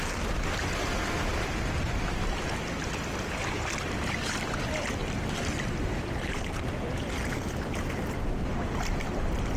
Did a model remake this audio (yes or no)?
no